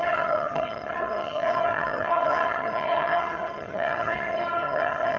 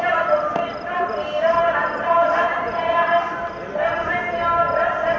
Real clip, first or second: second